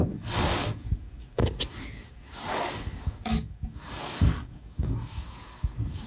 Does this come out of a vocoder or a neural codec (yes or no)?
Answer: yes